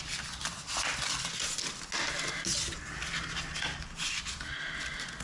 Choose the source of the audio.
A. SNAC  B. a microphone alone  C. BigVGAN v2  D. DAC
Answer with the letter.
B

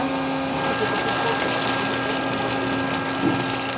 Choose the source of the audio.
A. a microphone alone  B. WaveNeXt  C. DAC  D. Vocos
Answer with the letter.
A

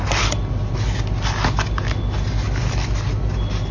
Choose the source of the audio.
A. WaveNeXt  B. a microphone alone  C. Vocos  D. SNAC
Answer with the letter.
B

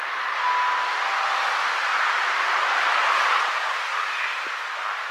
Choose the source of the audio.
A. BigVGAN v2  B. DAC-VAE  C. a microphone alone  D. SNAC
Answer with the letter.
C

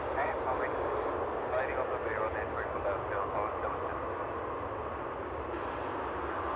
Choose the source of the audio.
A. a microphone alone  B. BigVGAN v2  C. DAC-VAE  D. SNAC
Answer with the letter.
A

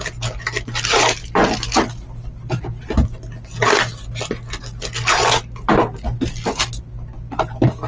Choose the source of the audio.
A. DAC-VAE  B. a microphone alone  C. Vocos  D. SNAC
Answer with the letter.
B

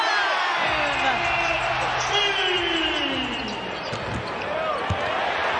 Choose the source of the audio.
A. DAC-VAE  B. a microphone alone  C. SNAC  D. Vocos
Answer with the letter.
B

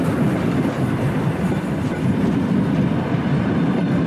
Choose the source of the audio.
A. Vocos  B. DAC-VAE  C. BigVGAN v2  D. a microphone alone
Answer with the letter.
C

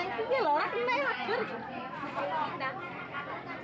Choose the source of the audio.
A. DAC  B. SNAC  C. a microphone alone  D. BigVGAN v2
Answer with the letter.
C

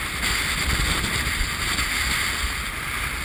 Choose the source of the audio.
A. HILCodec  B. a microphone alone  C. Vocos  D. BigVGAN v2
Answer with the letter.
B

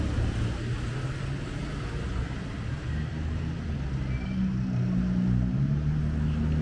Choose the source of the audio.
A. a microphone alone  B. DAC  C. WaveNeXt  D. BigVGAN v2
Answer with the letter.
A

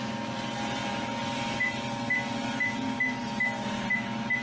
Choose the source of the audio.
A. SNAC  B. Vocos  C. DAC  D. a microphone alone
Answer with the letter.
D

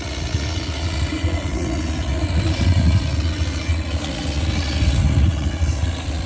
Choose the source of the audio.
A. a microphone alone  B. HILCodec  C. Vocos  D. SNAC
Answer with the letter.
C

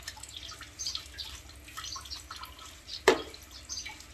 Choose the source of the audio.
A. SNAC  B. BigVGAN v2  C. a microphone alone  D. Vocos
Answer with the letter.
C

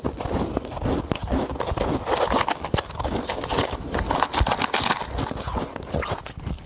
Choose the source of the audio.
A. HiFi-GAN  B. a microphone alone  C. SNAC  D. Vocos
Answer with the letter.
B